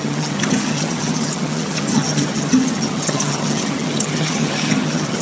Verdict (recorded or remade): remade